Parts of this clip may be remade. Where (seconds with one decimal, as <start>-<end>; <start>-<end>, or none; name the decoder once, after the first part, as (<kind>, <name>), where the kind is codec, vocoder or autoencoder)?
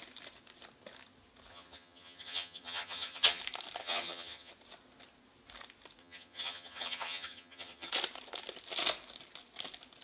1.5-3.4 (vocoder, HiFi-GAN); 3.8-4.5; 6.0-7.9